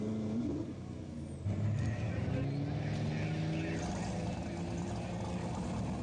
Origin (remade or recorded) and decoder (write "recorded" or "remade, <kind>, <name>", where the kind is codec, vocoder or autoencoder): recorded